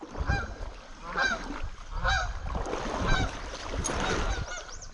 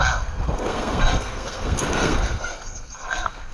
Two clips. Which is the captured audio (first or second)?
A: first